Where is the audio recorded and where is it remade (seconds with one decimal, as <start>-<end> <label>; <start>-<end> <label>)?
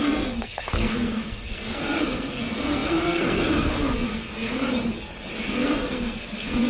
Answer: 0.0-4.5 remade; 4.5-5.4 recorded; 5.4-6.7 remade